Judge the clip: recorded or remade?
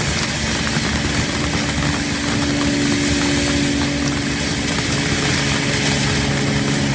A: recorded